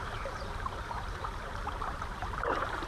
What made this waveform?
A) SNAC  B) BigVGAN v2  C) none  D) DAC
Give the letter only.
B